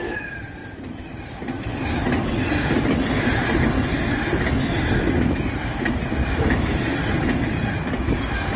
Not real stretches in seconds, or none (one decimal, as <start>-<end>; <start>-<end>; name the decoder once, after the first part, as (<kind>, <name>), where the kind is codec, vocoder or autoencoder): none

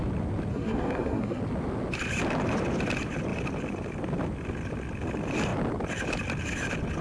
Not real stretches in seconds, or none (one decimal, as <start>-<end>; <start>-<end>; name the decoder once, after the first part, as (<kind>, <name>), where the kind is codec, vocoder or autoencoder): 0.5-1.4 (codec, SNAC)

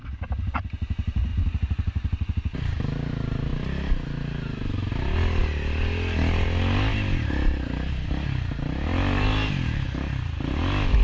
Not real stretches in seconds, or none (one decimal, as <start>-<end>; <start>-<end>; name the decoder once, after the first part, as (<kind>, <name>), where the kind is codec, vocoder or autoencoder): 1.3-3.1 (vocoder, BigVGAN v2); 3.5-4.9

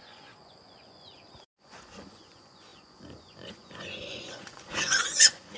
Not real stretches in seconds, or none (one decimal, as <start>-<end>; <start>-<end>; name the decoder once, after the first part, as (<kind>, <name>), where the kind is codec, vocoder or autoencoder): 0.0-5.6 (vocoder, Vocos)

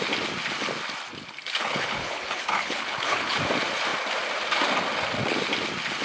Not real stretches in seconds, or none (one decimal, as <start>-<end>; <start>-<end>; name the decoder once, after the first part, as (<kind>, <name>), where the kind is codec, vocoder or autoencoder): 1.6-3.4 (codec, HILCodec)

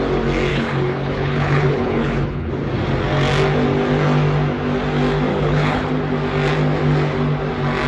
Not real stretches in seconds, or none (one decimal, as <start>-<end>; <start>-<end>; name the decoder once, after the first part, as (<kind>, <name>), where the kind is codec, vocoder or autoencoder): 0.5-2.5 (codec, HILCodec); 5.3-5.9